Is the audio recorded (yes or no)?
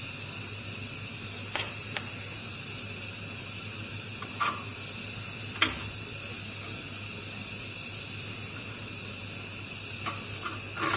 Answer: yes